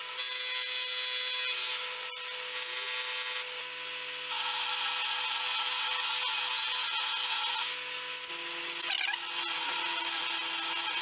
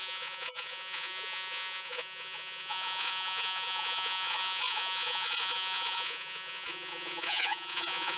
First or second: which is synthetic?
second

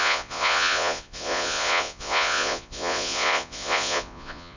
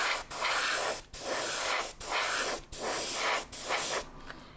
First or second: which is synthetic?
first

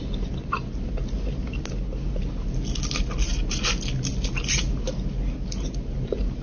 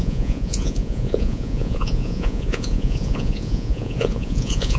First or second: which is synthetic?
second